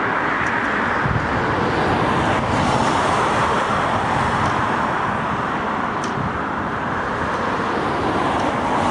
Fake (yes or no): no